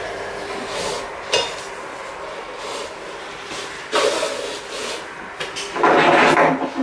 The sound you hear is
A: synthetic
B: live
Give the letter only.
B